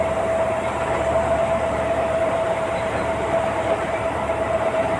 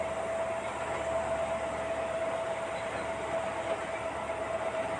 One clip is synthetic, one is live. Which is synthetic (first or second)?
first